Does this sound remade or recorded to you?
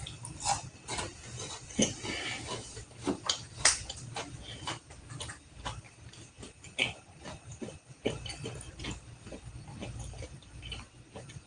recorded